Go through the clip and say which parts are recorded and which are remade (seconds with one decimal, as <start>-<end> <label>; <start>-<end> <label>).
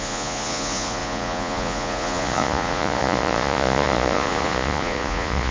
0.0-5.5 remade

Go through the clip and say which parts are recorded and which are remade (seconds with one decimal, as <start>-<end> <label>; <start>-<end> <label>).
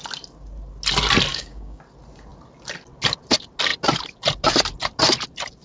0.0-1.3 recorded; 1.3-1.8 remade; 1.8-5.6 recorded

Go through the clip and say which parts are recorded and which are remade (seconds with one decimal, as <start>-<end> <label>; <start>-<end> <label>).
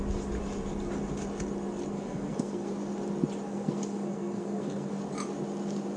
0.0-1.9 recorded; 1.9-2.7 remade; 2.7-3.5 recorded; 3.5-5.0 remade; 5.0-6.0 recorded